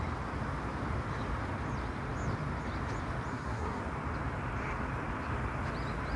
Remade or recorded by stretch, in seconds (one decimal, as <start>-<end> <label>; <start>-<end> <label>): 0.0-3.3 recorded; 3.3-3.8 remade; 3.8-6.2 recorded